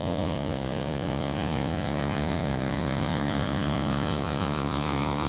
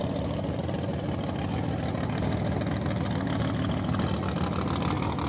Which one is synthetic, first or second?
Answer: first